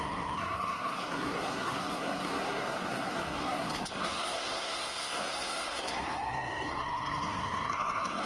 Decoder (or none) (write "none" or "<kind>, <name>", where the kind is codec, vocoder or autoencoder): codec, SNAC